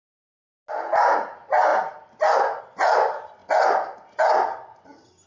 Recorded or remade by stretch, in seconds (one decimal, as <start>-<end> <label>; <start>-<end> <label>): 0.0-5.3 recorded